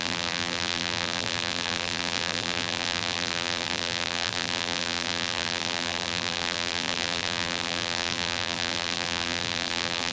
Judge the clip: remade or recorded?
remade